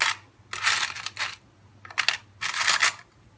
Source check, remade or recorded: recorded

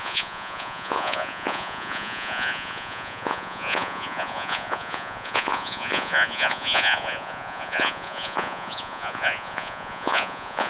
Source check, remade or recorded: remade